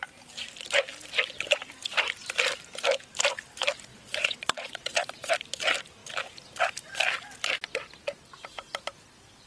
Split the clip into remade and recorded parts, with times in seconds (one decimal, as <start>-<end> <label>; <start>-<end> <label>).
0.0-3.9 recorded; 3.9-5.3 remade; 5.3-9.5 recorded